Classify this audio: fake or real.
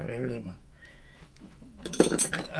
fake